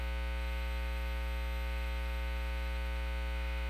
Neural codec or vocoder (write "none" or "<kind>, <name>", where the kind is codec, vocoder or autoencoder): autoencoder, DAC-VAE